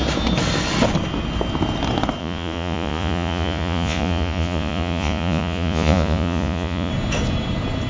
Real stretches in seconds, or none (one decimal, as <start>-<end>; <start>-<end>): 0.0-2.2; 6.9-7.9